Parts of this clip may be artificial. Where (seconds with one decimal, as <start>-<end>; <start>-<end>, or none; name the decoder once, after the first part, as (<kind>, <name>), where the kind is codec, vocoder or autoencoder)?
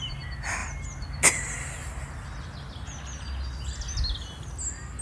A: none